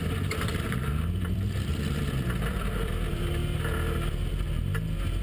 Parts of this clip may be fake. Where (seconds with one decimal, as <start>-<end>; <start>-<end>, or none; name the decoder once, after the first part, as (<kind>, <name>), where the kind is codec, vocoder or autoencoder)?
0.0-3.4 (vocoder, BigVGAN v2); 4.1-4.6